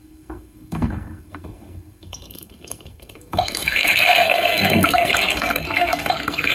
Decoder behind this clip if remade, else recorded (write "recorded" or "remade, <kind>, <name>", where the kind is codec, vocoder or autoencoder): remade, codec, SNAC